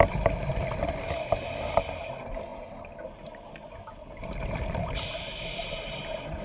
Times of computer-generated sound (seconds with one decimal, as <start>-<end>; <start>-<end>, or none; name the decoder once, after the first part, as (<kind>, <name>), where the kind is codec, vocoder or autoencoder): none